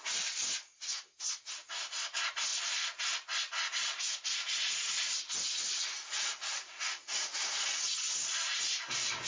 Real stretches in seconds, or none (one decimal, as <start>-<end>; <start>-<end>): 0.0-9.3